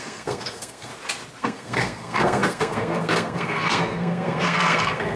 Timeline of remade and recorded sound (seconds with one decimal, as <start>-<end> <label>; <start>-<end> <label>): 0.0-0.9 remade; 0.9-1.4 recorded; 1.4-5.2 remade